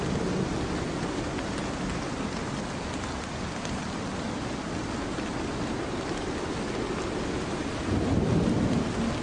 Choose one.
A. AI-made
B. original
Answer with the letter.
B